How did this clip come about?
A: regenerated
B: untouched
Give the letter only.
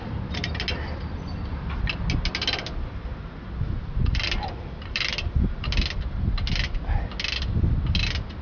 B